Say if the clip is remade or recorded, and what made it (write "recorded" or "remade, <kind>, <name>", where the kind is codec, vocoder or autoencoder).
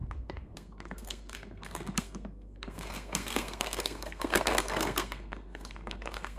remade, codec, SNAC